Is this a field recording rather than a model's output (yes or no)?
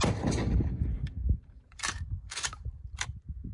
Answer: no